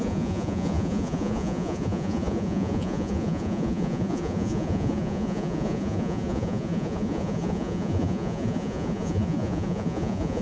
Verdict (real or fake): fake